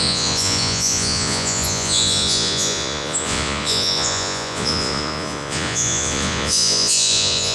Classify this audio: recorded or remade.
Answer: remade